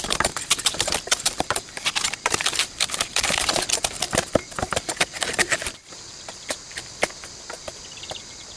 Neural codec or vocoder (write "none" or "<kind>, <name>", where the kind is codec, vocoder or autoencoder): vocoder, BigVGAN v2